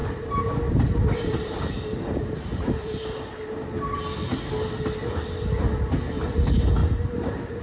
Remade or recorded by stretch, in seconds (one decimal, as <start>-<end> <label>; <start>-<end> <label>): 0.0-3.3 remade; 3.3-6.8 recorded; 6.8-7.6 remade